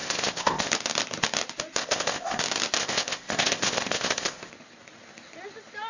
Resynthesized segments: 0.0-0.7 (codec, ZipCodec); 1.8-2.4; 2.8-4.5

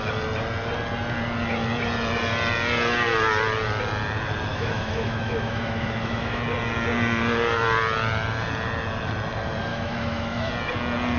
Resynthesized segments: 4.5-6.4 (autoencoder, DAC-VAE); 9.7-10.5

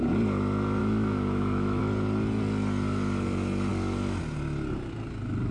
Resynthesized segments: 0.8-1.8 (autoencoder, DAC-VAE)

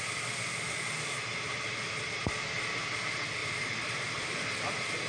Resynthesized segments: 3.4-5.1 (vocoder, BigVGAN v2)

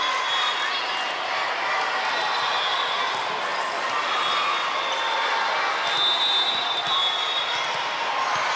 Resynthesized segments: none

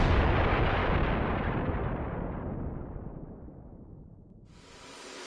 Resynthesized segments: none

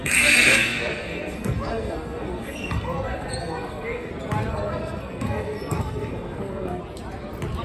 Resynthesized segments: 0.0-4.1 (codec, SNAC); 4.5-6.8